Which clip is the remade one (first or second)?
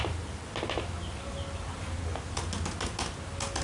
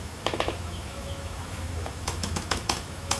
second